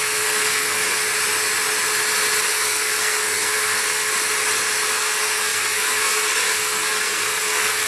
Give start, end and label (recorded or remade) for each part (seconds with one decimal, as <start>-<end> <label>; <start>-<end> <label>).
0.0-1.0 remade; 1.0-2.5 recorded; 2.5-4.1 remade; 4.1-4.9 recorded; 4.9-7.9 remade